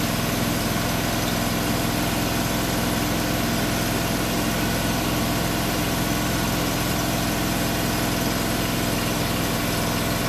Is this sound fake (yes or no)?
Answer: no